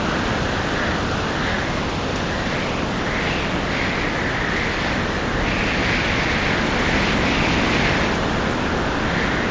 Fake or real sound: real